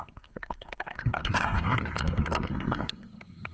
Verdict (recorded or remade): remade